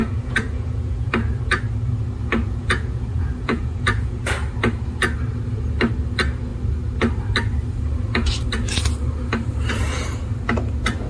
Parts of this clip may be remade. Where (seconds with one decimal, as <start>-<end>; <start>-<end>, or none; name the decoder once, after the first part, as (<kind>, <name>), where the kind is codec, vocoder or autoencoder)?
0.0-1.1 (vocoder, Vocos); 2.2-4.2